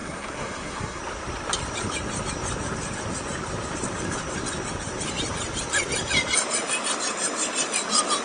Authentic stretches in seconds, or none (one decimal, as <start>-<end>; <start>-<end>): 1.0-8.2